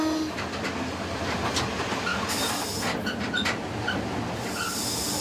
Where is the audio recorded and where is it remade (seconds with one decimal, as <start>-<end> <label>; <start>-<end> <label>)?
0.0-5.2 recorded